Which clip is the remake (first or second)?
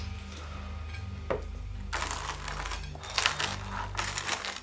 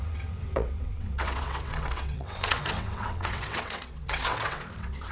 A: second